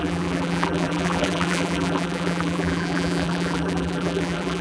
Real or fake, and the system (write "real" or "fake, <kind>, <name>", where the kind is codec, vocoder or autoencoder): fake, vocoder, BigVGAN v2